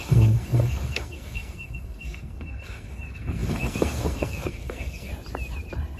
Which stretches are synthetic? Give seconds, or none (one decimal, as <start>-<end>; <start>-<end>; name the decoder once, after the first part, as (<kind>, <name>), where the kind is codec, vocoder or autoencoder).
0.0-5.1 (codec, SNAC)